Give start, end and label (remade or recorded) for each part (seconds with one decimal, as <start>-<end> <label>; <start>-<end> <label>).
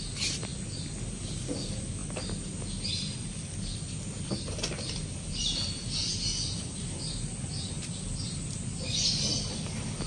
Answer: 0.0-10.1 recorded